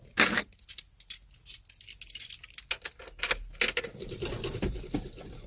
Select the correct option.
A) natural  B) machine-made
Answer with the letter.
A